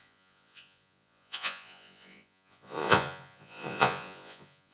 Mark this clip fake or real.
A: fake